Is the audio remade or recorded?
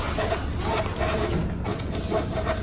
recorded